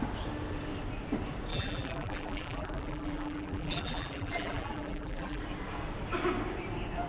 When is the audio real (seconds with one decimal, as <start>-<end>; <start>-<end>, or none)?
0.0-1.5; 5.4-7.1